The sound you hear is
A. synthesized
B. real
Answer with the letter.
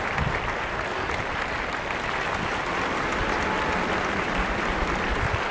A